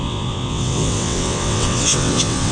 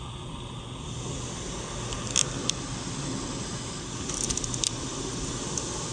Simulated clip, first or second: first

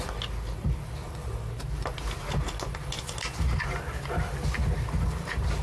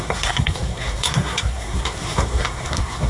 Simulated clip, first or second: second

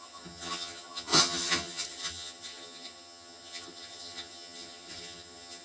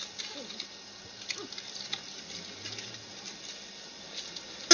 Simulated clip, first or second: first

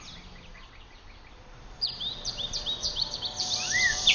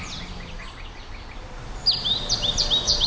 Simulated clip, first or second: first